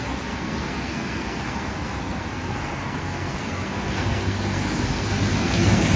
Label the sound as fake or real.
fake